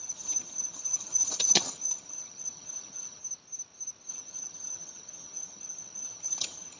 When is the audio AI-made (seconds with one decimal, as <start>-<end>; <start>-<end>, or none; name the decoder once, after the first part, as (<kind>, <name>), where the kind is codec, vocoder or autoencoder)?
0.0-3.2 (vocoder, HiFi-GAN); 4.1-6.8